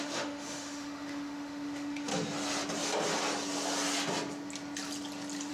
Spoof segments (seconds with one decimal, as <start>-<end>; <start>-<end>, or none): 0.0-2.1